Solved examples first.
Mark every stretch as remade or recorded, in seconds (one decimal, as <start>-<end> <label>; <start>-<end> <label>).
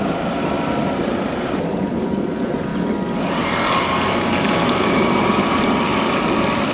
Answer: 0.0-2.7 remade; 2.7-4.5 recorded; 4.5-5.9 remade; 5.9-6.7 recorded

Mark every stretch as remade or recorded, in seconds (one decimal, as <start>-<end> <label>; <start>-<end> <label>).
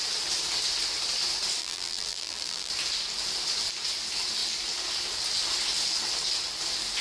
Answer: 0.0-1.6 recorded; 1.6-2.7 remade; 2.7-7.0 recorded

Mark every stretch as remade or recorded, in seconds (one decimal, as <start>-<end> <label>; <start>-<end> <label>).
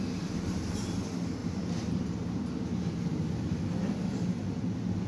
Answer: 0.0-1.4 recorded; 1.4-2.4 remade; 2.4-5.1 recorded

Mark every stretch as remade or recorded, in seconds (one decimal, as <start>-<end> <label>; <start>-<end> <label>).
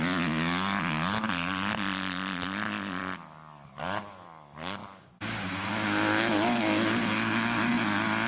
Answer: 0.0-8.3 recorded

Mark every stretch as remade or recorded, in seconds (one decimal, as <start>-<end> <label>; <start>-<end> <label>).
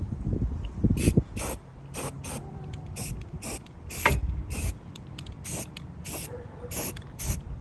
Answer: 0.0-1.7 remade; 1.7-2.5 recorded; 2.5-7.6 remade